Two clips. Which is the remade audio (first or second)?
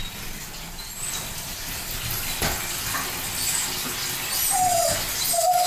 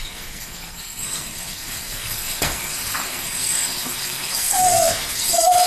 second